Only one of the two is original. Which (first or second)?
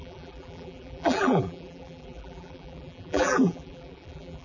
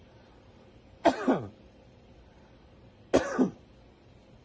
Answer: second